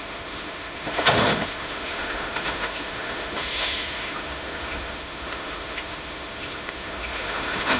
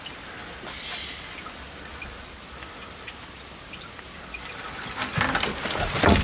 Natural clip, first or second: second